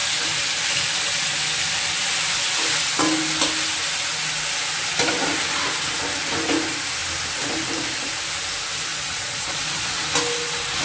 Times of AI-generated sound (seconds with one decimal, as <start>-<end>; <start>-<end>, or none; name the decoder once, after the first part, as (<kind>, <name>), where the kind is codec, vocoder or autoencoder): 8.9-10.0 (vocoder, Vocos)